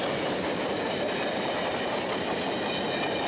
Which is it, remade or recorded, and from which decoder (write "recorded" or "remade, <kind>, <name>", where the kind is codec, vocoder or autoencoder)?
recorded